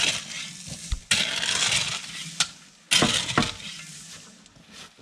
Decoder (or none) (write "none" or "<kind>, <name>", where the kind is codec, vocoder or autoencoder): none